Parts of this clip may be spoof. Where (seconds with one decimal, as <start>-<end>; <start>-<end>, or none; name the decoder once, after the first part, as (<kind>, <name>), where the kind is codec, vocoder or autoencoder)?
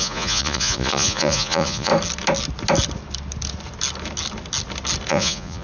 0.0-1.9 (vocoder, Vocos); 5.1-5.6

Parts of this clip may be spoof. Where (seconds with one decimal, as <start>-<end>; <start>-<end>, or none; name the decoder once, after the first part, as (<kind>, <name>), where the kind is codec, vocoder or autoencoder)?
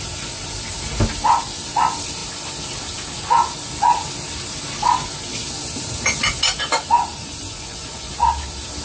7.1-8.1 (vocoder, Vocos)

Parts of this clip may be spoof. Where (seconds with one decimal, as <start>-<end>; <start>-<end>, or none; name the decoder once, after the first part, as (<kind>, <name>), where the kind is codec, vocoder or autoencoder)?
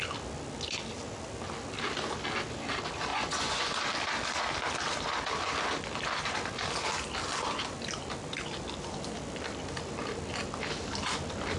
3.1-3.8 (vocoder, Vocos)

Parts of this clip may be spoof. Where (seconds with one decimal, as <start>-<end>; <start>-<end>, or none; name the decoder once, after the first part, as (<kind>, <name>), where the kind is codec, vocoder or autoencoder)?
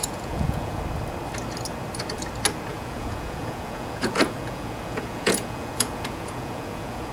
0.0-0.8 (vocoder, Vocos); 2.7-7.1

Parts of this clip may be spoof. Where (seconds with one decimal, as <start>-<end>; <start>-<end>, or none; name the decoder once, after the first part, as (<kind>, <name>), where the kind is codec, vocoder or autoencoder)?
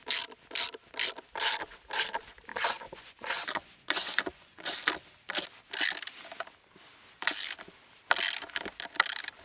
2.5-4.7 (vocoder, Vocos)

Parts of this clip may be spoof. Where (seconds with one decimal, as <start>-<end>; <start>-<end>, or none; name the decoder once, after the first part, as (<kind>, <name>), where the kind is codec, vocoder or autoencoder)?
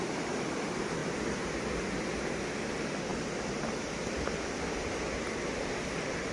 none